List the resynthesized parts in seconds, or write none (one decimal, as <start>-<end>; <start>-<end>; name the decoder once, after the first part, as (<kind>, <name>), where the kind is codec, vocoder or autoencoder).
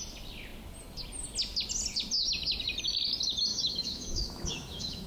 3.5-5.1 (autoencoder, DAC-VAE)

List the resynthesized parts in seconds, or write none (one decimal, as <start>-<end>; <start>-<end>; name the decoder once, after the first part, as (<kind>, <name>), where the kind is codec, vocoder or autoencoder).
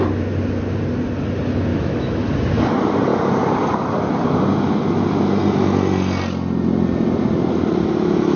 1.7-2.2 (autoencoder, DAC-VAE)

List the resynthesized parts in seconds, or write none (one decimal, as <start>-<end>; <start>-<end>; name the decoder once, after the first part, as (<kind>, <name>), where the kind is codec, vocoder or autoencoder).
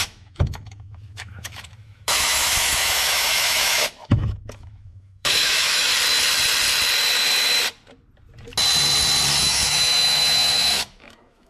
0.0-5.9 (autoencoder, DAC-VAE); 9.4-11.5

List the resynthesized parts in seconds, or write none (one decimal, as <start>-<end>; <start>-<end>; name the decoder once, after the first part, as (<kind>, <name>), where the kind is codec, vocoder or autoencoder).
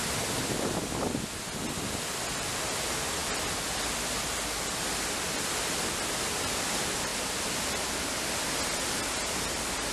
none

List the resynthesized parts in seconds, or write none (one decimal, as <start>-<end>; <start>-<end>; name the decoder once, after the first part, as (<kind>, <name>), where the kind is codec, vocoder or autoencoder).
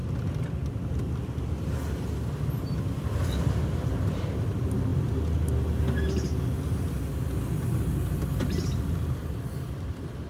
none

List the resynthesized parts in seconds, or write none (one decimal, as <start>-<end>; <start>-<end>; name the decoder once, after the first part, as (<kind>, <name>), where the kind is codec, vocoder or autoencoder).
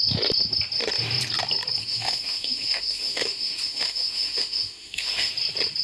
1.8-5.3 (autoencoder, DAC-VAE)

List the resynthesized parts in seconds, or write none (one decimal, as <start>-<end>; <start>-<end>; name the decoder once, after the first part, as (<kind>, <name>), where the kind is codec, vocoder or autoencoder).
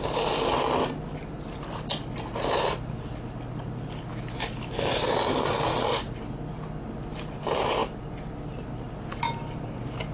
4.1-4.7 (autoencoder, DAC-VAE)